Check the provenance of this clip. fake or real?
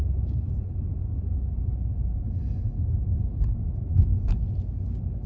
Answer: real